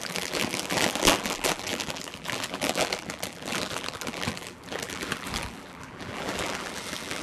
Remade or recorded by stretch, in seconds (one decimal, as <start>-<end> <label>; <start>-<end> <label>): 0.0-7.2 remade